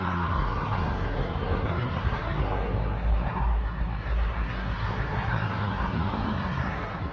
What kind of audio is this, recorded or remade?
remade